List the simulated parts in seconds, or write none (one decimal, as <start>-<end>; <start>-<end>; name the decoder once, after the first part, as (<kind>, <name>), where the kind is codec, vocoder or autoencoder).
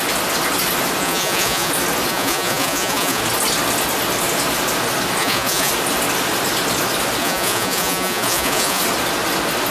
1.0-1.7 (vocoder, Vocos); 2.1-3.2; 5.2-5.7; 7.2-8.8